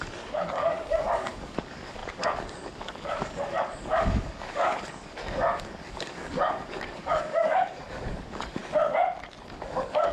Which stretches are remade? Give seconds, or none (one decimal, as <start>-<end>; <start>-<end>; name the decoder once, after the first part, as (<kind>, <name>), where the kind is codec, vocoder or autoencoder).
0.0-8.6 (codec, DAC); 9.4-10.1